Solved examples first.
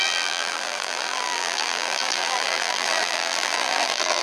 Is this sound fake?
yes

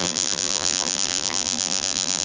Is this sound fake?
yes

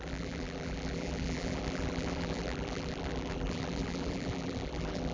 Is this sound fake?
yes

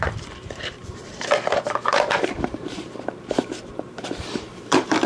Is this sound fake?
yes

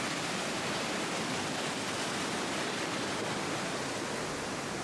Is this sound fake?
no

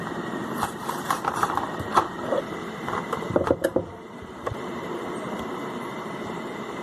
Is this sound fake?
yes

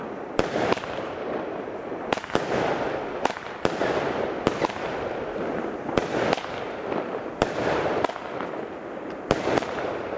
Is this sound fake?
yes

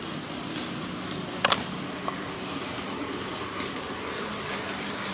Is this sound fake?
no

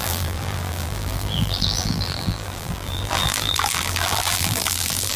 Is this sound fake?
yes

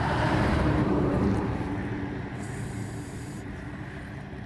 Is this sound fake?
yes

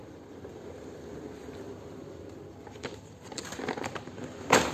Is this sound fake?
yes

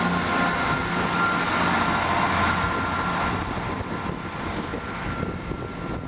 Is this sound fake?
no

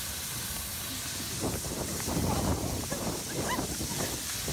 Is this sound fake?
no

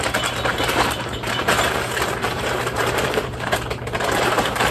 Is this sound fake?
yes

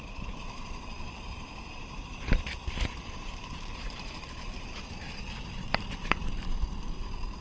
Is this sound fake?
yes